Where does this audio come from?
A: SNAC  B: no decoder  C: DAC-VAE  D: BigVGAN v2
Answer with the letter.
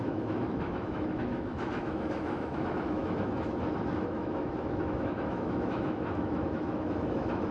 C